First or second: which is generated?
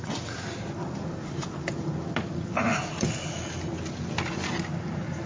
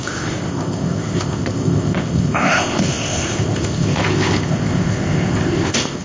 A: second